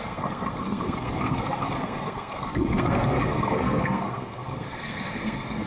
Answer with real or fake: fake